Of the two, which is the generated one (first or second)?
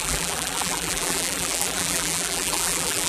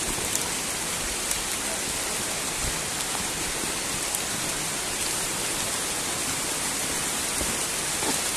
first